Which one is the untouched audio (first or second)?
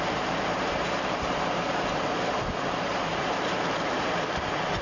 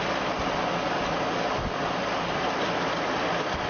second